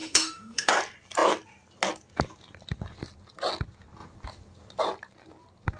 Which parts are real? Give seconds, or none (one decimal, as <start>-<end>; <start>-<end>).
0.7-5.8

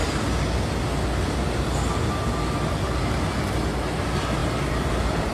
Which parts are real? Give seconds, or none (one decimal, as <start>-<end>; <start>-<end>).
0.0-5.3